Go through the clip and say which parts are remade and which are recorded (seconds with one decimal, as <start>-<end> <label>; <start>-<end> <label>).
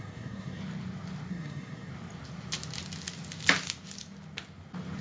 0.0-0.6 remade; 0.6-1.3 recorded; 1.3-1.9 remade; 1.9-5.0 recorded